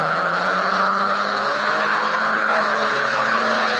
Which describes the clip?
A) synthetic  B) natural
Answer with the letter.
A